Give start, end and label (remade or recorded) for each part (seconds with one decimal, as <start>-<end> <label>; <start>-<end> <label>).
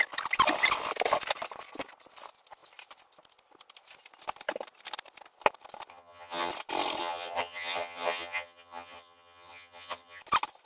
0.0-5.9 recorded; 5.9-6.5 remade; 6.5-7.0 recorded; 7.0-10.2 remade; 10.2-10.7 recorded